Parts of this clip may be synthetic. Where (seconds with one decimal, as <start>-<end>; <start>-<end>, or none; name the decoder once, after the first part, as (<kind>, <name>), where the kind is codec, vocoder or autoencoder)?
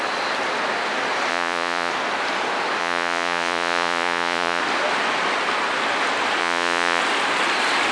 1.3-1.9 (vocoder, Vocos); 2.8-4.6; 6.4-7.0